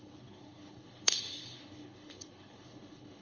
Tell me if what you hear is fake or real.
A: fake